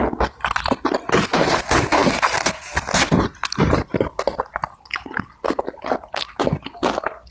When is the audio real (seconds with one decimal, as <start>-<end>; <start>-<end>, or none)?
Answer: 0.0-7.3